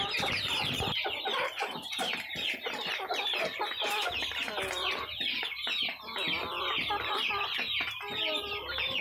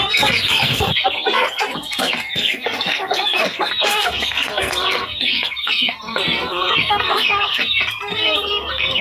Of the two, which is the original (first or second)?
first